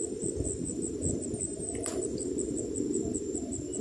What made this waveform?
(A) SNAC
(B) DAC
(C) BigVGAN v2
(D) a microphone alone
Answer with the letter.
D